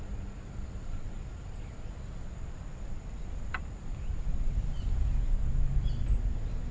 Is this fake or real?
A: real